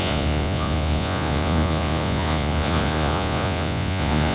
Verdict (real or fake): fake